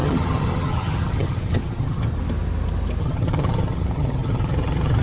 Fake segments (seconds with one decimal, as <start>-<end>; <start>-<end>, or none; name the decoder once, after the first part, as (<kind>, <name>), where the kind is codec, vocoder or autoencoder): 0.0-2.1 (vocoder, HiFi-GAN); 3.0-5.0

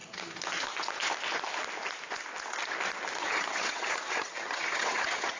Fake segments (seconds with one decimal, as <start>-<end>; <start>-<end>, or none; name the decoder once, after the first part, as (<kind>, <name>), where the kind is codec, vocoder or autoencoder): 3.2-5.4 (vocoder, HiFi-GAN)

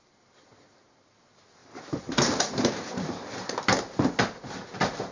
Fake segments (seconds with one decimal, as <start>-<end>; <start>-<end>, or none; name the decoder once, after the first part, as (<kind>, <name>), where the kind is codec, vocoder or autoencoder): none

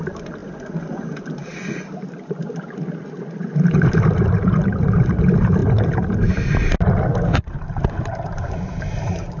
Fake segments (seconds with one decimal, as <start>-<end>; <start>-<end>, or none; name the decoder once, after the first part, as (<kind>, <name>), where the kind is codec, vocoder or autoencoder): none

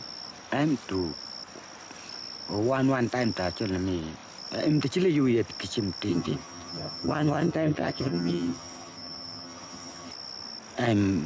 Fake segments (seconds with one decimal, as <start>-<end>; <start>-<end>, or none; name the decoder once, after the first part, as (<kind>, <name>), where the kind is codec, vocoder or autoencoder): 6.1-10.1 (vocoder, HiFi-GAN)

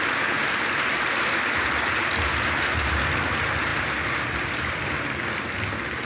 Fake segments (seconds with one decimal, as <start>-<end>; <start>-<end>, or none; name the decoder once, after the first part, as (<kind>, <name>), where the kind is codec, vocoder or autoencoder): none

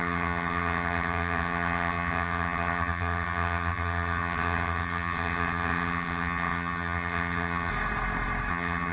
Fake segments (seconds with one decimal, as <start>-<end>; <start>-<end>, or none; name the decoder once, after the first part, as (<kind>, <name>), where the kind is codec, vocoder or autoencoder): 0.0-7.7 (vocoder, HiFi-GAN); 8.5-8.9